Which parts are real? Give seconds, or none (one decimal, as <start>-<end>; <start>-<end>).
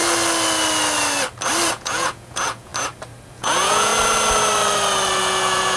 0.0-1.7; 2.7-3.4; 3.9-5.2